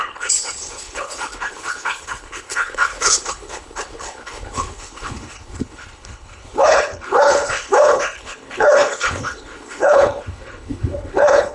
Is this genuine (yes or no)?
no